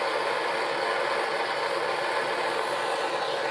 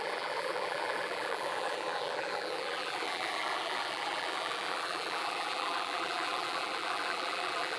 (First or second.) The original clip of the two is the first